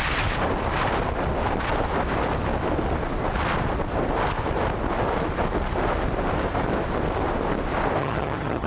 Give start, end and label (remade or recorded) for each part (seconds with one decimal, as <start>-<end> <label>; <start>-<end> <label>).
0.0-8.0 recorded; 8.0-8.7 remade